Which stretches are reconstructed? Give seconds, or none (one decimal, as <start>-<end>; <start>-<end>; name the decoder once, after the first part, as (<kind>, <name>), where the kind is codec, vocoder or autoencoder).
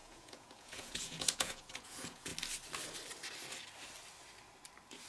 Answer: 0.0-2.3 (vocoder, Vocos)